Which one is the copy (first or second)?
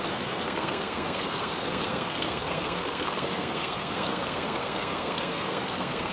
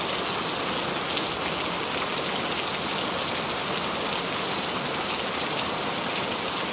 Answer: first